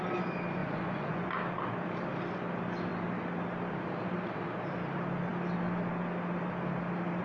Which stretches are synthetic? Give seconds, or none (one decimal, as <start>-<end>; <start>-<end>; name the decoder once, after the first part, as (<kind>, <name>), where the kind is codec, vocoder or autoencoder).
0.6-1.3 (vocoder, Vocos)